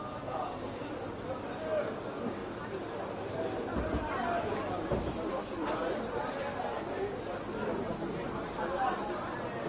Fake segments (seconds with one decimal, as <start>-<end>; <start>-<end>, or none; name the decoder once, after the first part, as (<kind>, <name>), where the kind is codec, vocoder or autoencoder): none